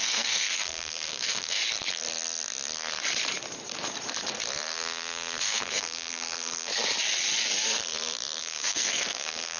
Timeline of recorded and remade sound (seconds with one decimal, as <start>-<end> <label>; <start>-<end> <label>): 0.0-1.6 remade; 1.6-5.4 recorded; 5.4-6.7 remade; 6.7-8.4 recorded; 8.4-9.6 remade